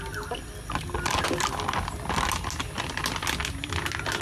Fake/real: real